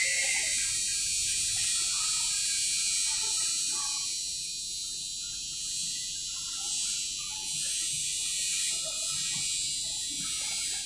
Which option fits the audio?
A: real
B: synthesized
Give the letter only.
A